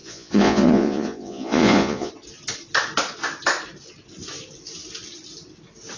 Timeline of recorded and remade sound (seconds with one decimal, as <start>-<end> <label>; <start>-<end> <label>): 0.0-2.1 remade; 2.1-6.0 recorded